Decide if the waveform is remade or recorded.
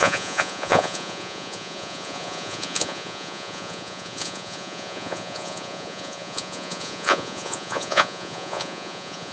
remade